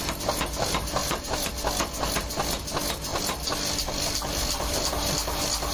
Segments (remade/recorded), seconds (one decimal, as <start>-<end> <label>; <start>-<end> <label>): 0.0-1.0 recorded; 1.0-1.5 remade; 1.5-3.1 recorded; 3.1-4.9 remade; 4.9-5.7 recorded

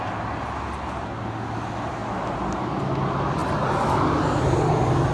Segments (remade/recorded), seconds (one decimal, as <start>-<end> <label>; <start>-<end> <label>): 0.0-5.1 recorded

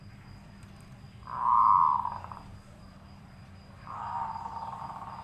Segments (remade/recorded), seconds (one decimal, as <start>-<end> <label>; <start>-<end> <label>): 0.0-1.6 recorded; 1.6-4.7 remade; 4.7-5.2 recorded

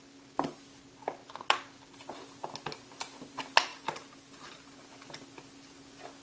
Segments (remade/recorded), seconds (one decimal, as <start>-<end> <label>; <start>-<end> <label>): 0.0-6.2 recorded

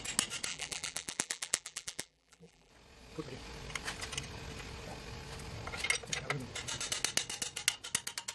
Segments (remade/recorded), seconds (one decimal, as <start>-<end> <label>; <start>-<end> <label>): 0.0-0.5 recorded; 0.5-2.7 remade; 2.7-8.3 recorded

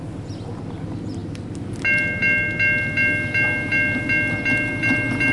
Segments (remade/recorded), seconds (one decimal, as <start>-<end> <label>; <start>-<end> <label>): 0.0-5.3 recorded

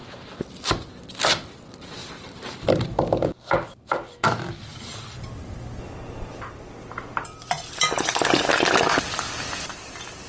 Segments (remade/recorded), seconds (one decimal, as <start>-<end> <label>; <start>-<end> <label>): 0.0-0.9 remade; 0.9-2.0 recorded; 2.0-2.7 remade; 2.7-4.7 recorded; 4.7-8.5 remade; 8.5-10.3 recorded